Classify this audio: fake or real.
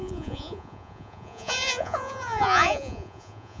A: fake